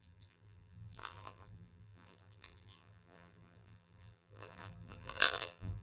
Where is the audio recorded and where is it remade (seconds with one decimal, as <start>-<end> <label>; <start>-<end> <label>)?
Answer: 0.0-5.8 remade